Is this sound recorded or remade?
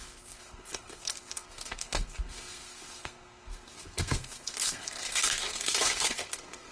remade